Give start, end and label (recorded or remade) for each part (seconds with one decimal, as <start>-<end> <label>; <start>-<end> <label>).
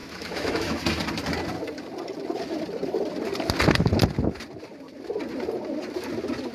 0.0-0.8 remade; 0.8-6.5 recorded